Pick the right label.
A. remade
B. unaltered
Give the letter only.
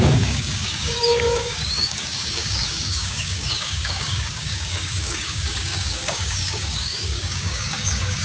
A